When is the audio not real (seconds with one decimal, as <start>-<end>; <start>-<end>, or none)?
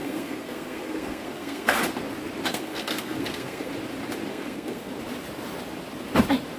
0.0-1.8; 2.5-3.7; 4.3-4.9